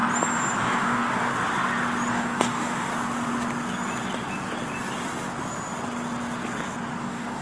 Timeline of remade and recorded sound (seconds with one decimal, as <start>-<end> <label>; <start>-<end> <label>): 0.0-0.6 recorded; 0.6-1.3 remade; 1.3-2.1 recorded; 2.1-2.9 remade; 2.9-7.0 recorded; 7.0-7.4 remade